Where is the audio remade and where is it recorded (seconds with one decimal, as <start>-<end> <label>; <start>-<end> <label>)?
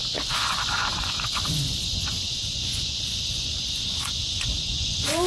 0.0-5.3 remade